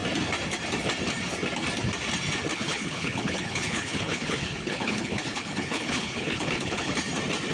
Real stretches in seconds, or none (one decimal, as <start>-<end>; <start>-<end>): 0.0-2.5; 6.9-7.5